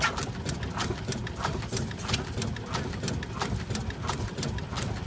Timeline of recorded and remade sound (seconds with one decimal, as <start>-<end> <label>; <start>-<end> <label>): 0.0-5.1 recorded